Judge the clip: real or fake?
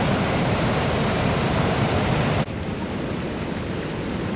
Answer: real